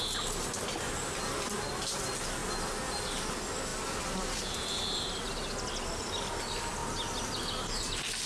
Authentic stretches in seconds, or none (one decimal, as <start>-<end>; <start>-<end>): 0.0-8.3